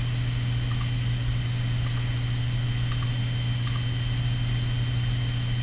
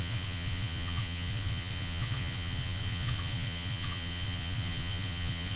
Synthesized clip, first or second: second